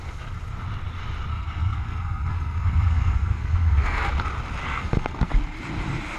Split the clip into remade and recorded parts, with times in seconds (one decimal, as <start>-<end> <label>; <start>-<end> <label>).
0.0-1.3 recorded; 1.3-4.1 remade; 4.1-4.6 recorded; 4.6-5.3 remade; 5.3-6.2 recorded